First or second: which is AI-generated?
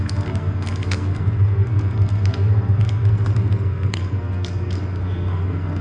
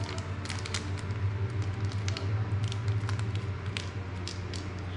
first